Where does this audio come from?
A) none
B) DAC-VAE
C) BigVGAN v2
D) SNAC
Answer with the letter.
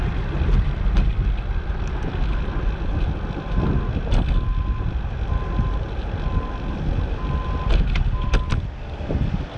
A